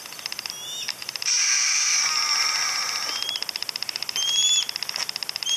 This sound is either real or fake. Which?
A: real